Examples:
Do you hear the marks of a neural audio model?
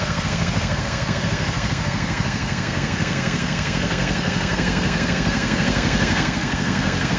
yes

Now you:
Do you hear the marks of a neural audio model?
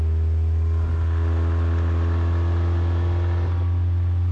no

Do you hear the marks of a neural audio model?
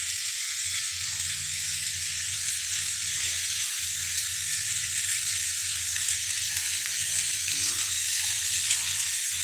yes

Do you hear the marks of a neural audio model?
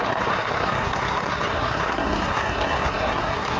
yes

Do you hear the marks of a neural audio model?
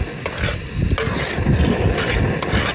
no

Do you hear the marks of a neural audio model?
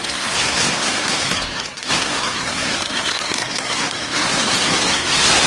yes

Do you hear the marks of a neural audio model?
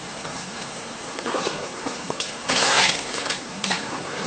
yes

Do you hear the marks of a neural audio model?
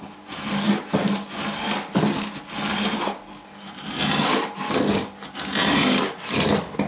no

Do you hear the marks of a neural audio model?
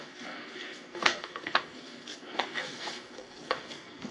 yes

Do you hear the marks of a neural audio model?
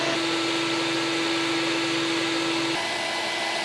no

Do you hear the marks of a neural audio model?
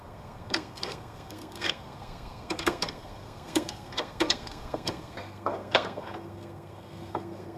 yes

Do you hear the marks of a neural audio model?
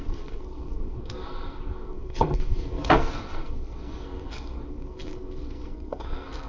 yes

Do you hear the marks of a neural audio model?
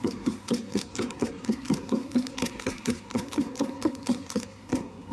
yes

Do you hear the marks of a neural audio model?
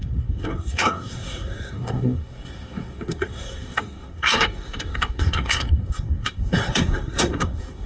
yes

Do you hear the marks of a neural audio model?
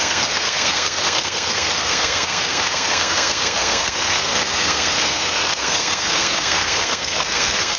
yes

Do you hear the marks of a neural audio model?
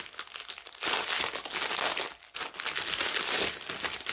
no